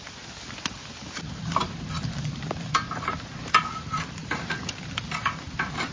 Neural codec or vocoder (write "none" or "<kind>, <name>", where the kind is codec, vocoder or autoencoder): vocoder, BigVGAN v2